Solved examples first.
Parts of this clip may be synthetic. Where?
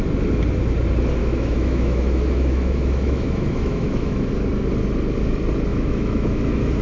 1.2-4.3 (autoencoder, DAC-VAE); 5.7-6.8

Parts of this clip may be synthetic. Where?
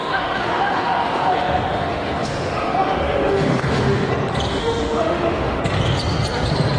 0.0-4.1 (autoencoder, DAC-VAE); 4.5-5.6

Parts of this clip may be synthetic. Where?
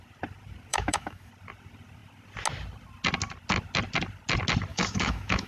0.7-1.3 (autoencoder, DAC-VAE); 4.7-5.5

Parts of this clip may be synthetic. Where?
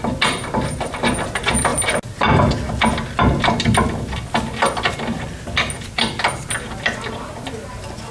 none